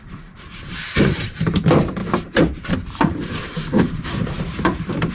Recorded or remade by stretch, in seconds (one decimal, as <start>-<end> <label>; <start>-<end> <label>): 0.0-5.1 remade